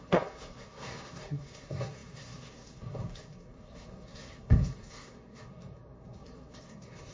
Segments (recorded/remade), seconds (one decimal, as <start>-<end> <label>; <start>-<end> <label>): 0.0-7.1 remade